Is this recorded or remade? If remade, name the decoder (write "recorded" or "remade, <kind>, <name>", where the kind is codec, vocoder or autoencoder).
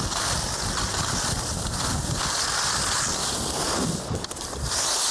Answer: recorded